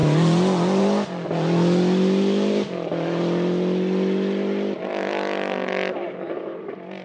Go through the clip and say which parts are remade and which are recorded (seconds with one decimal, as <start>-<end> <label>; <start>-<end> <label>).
0.0-7.0 recorded